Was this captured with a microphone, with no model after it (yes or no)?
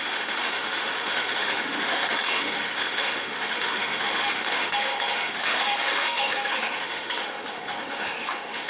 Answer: no